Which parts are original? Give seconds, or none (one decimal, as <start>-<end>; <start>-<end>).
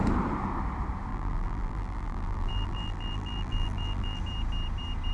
0.0-1.1; 4.2-5.1